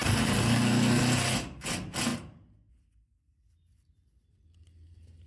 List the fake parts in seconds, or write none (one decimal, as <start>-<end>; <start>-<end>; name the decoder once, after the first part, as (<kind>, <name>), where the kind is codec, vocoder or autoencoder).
0.4-1.0 (codec, SNAC)